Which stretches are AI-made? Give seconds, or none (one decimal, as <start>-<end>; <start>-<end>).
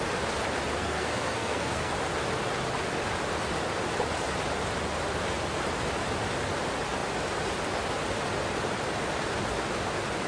0.7-1.9